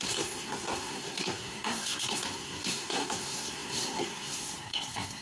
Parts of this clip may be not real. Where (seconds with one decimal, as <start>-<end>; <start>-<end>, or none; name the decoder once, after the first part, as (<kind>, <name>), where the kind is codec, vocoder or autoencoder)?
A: 0.0-5.2 (codec, SNAC)

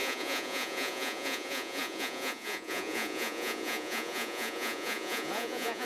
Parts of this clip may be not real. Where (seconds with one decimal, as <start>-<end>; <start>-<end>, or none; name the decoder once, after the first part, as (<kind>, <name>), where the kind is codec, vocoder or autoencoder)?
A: 0.0-5.9 (vocoder, Vocos)

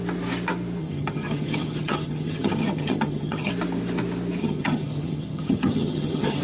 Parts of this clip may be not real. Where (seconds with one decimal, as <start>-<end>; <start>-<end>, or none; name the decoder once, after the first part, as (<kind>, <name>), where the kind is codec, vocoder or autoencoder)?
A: 0.8-3.5 (vocoder, HiFi-GAN); 4.4-6.4

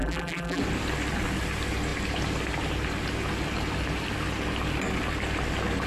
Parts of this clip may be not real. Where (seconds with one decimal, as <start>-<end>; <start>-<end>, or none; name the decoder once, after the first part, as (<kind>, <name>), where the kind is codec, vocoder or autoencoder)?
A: 0.0-0.6 (vocoder, BigVGAN v2)